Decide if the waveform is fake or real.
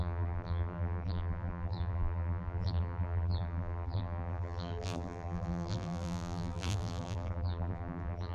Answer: fake